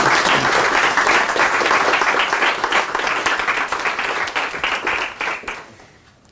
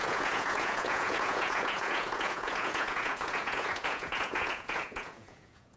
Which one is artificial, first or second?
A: second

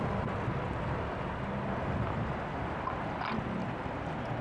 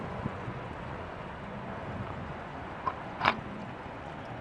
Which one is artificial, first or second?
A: second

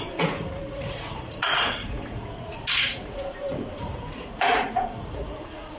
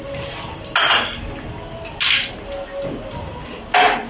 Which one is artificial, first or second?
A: first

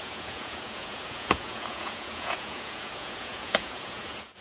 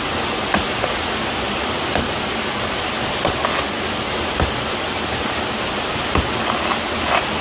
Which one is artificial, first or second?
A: first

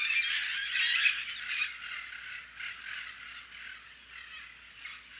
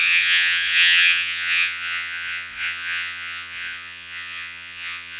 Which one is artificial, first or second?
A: second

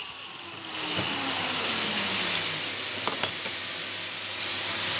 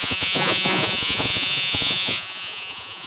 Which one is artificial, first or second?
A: second